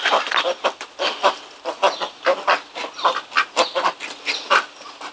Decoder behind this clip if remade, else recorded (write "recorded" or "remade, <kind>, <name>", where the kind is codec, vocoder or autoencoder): recorded